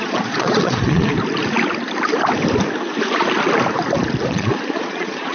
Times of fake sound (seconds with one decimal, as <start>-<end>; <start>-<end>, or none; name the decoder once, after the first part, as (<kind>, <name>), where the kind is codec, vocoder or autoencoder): 0.0-1.1 (vocoder, Vocos); 4.3-5.3